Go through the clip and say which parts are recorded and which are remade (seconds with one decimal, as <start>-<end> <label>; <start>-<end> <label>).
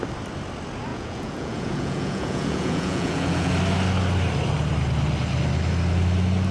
0.0-0.9 recorded; 0.9-3.5 remade; 3.5-6.5 recorded